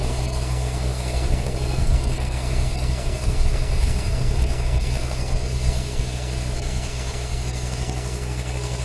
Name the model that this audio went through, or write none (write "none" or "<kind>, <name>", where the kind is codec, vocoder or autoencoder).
codec, SNAC